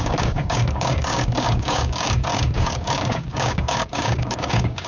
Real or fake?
fake